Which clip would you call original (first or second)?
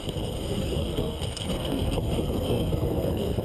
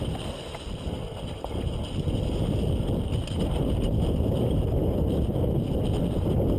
second